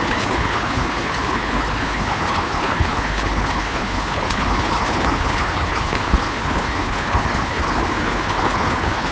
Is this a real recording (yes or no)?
no